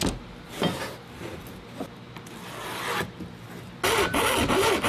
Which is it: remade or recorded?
recorded